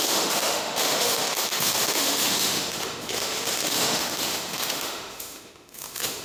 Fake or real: fake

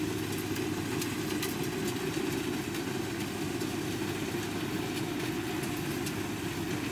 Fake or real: real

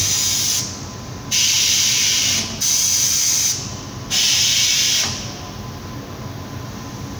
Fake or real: real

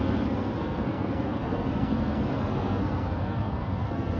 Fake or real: fake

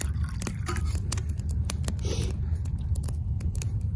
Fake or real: real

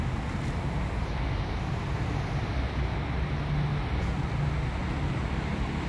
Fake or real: real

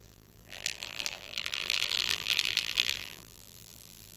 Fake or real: fake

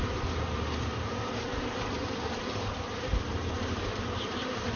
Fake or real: fake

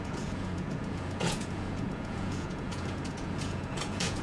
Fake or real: fake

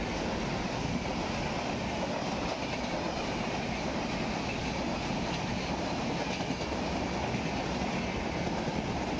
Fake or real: real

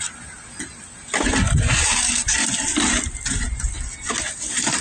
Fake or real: real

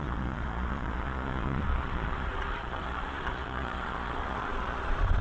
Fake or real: fake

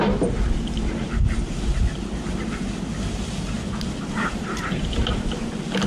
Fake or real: fake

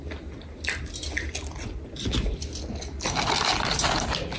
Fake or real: real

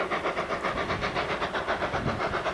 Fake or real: real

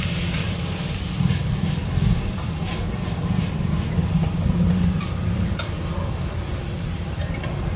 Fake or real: fake